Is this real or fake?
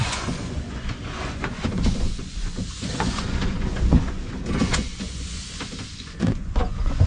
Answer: fake